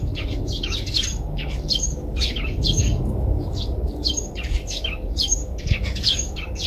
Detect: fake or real fake